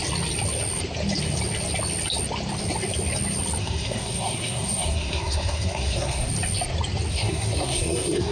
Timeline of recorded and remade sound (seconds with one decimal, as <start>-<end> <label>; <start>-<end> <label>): 0.0-3.6 recorded; 3.6-6.3 remade; 6.3-7.1 recorded; 7.1-8.3 remade

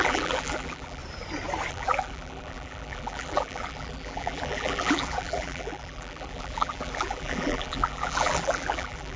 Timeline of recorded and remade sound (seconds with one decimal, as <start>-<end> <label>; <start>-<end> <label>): 0.0-1.0 remade; 1.0-1.7 recorded; 1.7-9.2 remade

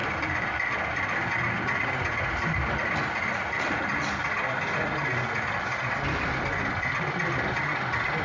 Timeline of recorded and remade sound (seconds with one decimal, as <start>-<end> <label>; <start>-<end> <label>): 0.0-1.3 remade; 1.3-8.2 recorded

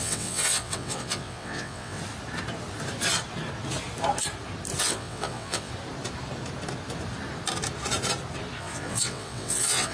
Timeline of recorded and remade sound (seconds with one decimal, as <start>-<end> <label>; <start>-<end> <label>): 0.0-2.0 remade; 2.0-4.8 recorded; 4.8-5.7 remade; 5.7-8.6 recorded; 8.6-9.9 remade

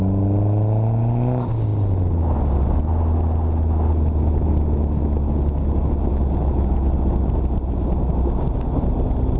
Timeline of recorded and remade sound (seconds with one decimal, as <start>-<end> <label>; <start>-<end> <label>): 0.0-9.4 recorded